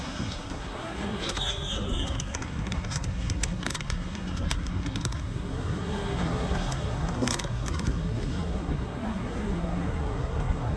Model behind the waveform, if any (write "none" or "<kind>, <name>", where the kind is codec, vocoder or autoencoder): codec, SNAC